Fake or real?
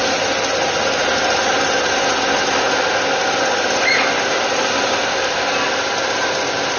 real